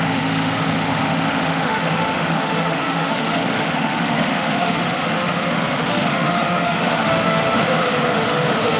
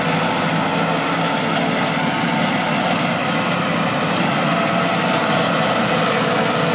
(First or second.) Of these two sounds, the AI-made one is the first